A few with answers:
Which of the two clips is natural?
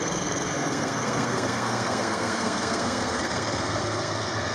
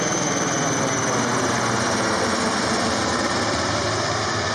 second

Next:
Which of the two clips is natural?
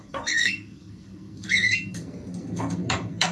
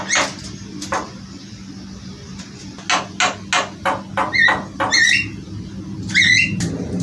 second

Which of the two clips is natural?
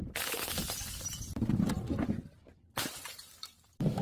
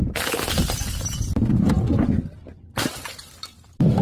second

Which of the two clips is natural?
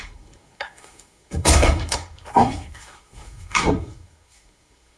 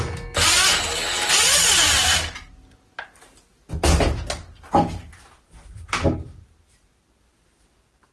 second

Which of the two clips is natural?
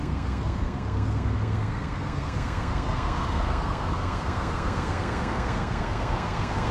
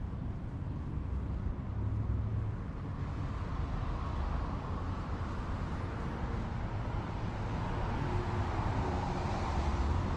second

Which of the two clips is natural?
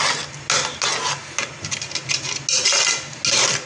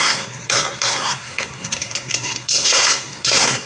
first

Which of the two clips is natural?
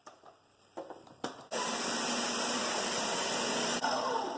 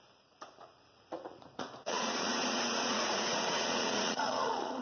first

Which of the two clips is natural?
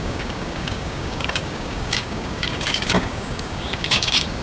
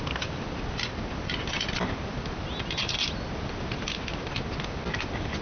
second